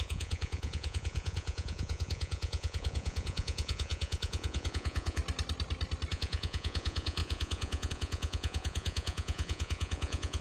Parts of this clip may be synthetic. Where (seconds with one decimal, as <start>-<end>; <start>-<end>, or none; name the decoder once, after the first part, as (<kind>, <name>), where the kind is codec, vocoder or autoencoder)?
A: 0.0-5.2 (vocoder, Vocos); 6.1-10.4

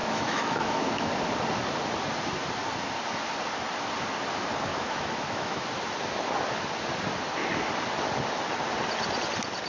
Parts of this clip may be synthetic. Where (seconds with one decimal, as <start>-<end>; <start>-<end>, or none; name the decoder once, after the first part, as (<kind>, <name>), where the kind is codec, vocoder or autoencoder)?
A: 0.0-1.1 (autoencoder, DAC-VAE); 4.7-5.6

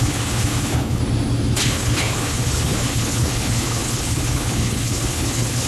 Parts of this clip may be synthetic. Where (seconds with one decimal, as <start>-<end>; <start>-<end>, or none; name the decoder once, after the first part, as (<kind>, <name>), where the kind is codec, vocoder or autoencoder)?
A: 0.0-1.0 (codec, HILCodec); 1.6-5.7